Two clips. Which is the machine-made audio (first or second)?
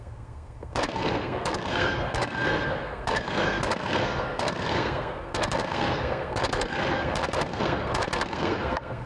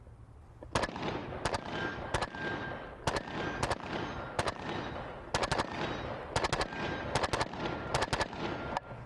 first